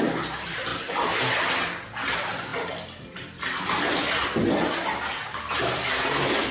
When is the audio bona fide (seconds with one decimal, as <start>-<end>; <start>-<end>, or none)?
0.0-6.5